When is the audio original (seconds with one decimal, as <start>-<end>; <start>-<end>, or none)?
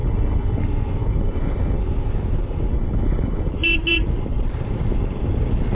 0.6-1.0; 1.8-2.7; 3.5-5.7